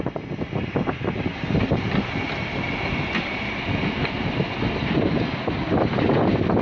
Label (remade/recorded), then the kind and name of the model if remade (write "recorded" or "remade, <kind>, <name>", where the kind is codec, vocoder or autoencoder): recorded